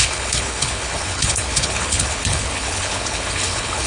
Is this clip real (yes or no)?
no